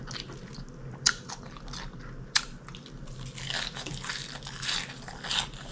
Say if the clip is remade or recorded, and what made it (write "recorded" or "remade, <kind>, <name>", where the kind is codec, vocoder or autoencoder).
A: recorded